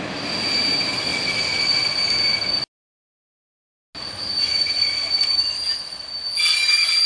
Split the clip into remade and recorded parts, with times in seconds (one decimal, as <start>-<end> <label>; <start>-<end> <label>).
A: 0.0-7.1 recorded